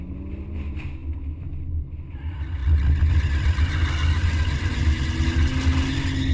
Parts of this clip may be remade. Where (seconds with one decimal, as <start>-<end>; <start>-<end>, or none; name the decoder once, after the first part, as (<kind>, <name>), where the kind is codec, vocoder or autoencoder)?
none